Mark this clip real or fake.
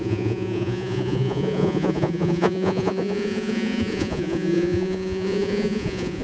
fake